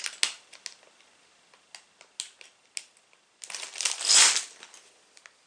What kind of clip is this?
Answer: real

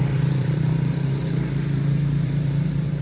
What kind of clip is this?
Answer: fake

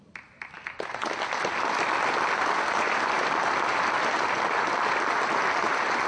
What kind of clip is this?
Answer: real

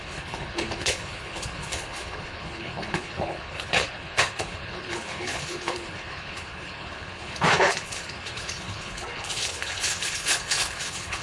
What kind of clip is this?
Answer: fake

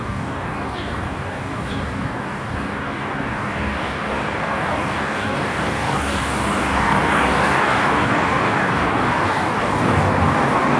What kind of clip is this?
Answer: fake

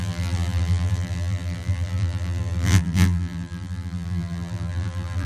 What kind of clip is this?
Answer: fake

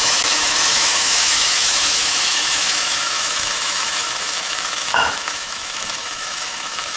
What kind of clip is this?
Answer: fake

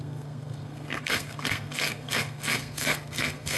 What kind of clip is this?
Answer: fake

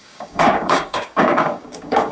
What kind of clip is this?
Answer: fake